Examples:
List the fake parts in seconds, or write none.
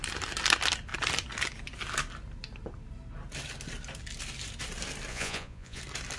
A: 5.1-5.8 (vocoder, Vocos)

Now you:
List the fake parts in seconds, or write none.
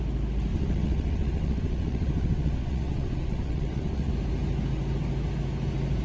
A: 0.5-4.1 (vocoder, WaveNeXt)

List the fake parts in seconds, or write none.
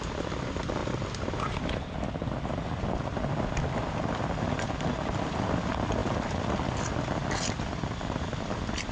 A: none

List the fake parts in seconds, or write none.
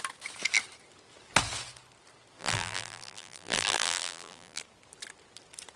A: 2.4-4.6 (vocoder, BigVGAN v2)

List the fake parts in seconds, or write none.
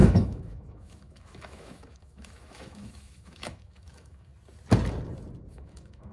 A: 0.0-4.3 (autoencoder, DAC-VAE); 5.5-6.1